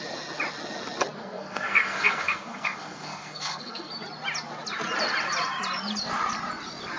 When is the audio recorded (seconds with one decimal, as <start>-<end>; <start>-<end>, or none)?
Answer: 0.0-1.2; 3.9-7.0